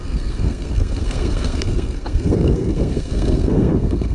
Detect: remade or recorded remade